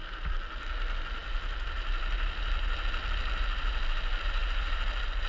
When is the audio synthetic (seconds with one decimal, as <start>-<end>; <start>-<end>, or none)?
none